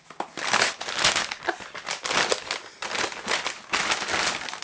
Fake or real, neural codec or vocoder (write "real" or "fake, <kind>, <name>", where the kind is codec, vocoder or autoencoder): real